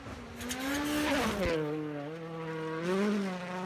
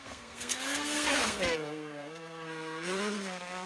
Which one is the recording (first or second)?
first